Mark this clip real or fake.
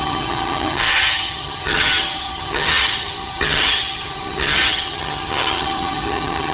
fake